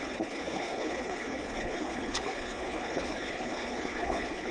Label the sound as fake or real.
fake